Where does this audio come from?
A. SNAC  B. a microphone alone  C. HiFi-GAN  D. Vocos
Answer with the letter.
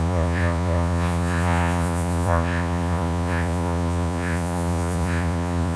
D